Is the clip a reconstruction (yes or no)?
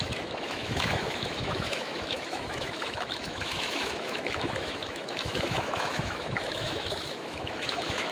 yes